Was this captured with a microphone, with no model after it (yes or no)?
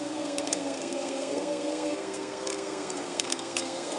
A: no